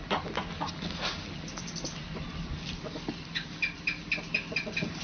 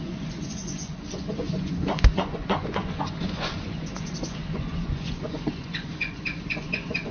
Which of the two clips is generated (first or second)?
second